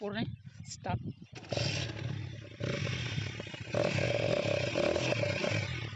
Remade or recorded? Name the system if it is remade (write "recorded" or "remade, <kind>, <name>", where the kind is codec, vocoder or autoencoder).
recorded